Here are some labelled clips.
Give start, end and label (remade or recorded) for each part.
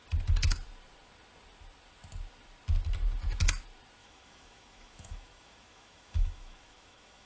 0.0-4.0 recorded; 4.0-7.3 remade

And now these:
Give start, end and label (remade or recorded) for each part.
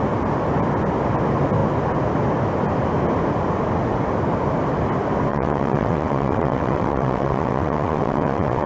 0.0-5.3 recorded; 5.3-8.7 remade